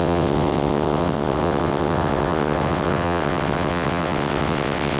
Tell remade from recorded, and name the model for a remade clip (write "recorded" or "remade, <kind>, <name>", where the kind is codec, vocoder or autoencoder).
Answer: remade, vocoder, WaveNeXt